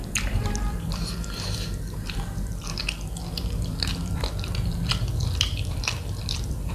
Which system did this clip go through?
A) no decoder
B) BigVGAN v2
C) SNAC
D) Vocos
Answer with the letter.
B